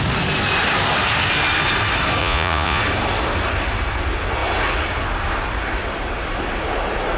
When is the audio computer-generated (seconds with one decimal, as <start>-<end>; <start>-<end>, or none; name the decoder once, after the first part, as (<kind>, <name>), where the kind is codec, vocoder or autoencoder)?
2.2-2.8 (vocoder, Vocos)